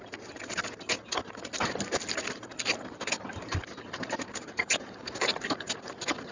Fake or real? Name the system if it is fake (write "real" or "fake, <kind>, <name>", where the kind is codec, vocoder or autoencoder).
real